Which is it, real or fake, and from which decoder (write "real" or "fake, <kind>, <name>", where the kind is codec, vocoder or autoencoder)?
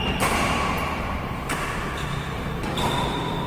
real